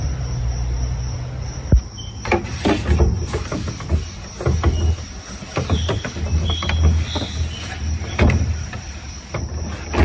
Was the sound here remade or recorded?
recorded